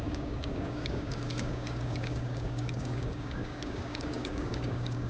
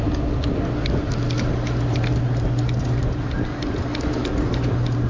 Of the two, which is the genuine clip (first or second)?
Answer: second